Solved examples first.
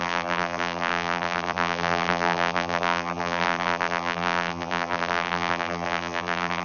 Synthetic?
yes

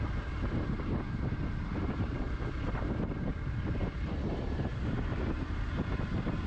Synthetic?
yes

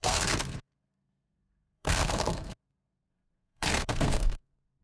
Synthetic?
yes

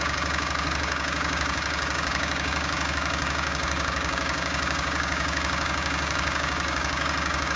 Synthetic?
yes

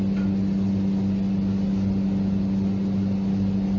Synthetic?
no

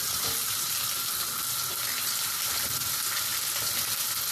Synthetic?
no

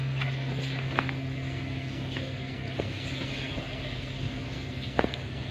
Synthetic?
yes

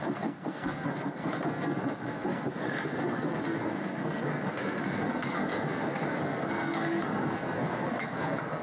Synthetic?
yes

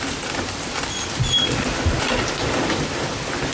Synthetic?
yes